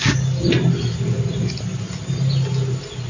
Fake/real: real